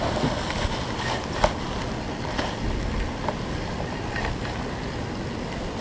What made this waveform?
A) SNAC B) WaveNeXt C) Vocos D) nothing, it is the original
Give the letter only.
D